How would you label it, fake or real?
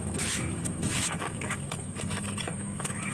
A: fake